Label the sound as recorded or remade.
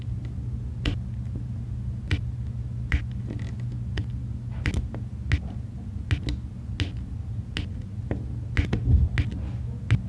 recorded